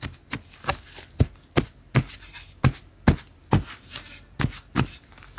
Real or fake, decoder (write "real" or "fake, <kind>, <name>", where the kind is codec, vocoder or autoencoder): real